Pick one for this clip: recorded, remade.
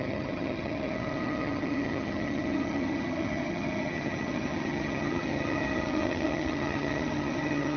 remade